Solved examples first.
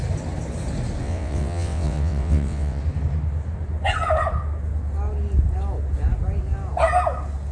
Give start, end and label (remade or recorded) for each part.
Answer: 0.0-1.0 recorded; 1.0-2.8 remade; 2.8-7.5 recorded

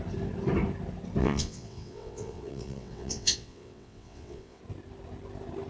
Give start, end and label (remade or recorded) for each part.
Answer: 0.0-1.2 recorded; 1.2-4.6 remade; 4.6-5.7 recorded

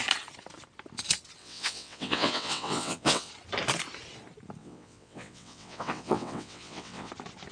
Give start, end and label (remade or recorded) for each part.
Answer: 0.0-1.4 recorded; 1.4-3.3 remade; 3.3-4.6 recorded; 4.6-7.1 remade; 7.1-7.5 recorded

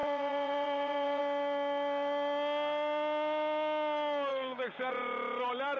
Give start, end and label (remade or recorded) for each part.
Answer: 0.0-1.2 remade; 1.2-4.3 recorded; 4.3-4.9 remade; 4.9-5.8 recorded

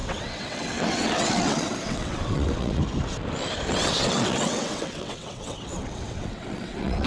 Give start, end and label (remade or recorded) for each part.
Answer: 0.0-2.8 remade; 2.8-3.7 recorded; 3.7-7.1 remade

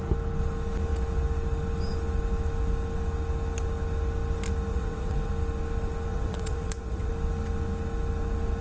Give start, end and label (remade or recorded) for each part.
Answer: 0.0-4.7 recorded; 4.7-5.3 remade; 5.3-6.1 recorded; 6.1-7.1 remade; 7.1-8.6 recorded